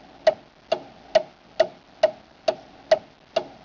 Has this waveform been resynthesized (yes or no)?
no